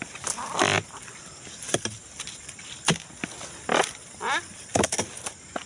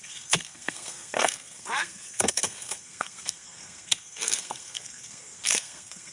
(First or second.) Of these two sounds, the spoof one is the second